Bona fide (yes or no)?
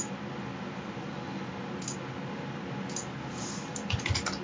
yes